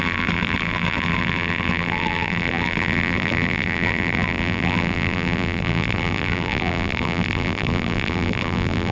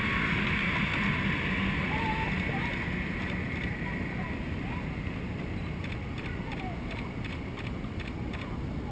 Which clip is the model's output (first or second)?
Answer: first